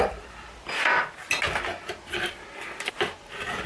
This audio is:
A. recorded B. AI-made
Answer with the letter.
A